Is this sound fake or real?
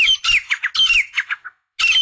real